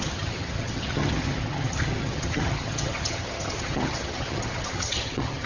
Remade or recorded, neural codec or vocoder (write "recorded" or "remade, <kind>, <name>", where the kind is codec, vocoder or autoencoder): remade, vocoder, HiFi-GAN